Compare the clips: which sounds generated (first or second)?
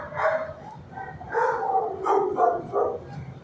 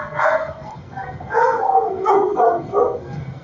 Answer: second